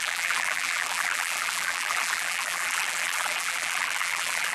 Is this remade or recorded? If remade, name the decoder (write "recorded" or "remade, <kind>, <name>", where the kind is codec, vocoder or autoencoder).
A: remade, vocoder, BigVGAN v2